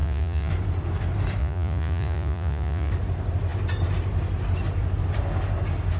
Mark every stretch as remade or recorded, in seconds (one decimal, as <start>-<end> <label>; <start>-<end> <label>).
0.0-0.5 remade; 0.5-1.4 recorded; 1.4-2.9 remade; 2.9-6.0 recorded

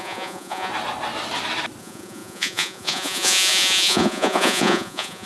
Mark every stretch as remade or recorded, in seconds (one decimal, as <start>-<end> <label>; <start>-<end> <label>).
0.0-0.7 remade; 0.7-1.8 recorded; 1.8-5.3 remade

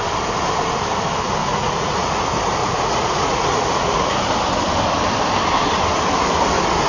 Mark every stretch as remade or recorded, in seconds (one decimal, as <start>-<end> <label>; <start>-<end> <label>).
0.0-1.4 recorded; 1.4-2.2 remade; 2.2-2.6 recorded; 2.6-4.1 remade; 4.1-6.9 recorded

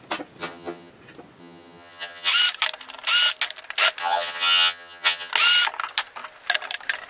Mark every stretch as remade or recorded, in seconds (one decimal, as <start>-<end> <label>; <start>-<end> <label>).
0.0-0.4 recorded; 0.4-0.9 remade; 0.9-1.4 recorded; 1.4-2.3 remade; 2.3-4.0 recorded; 4.0-5.3 remade; 5.3-7.1 recorded